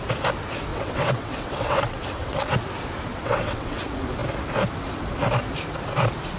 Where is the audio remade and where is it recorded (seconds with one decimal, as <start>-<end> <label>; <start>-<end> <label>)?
0.0-0.7 recorded; 0.7-2.5 remade; 2.5-3.1 recorded; 3.1-3.8 remade; 3.8-6.4 recorded